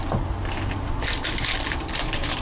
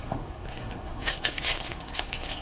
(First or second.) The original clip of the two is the first